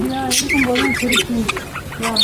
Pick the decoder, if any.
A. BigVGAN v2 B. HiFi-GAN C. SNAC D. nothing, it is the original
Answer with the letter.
D